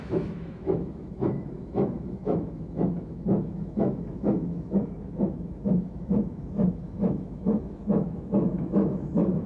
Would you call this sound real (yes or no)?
no